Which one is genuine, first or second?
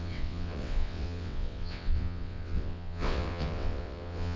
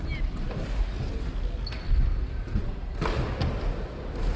second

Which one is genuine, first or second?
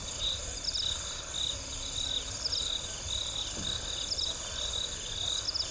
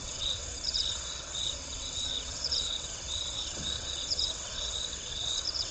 first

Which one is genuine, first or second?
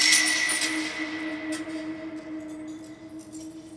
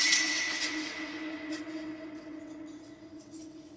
first